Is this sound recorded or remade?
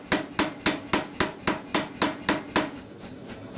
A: recorded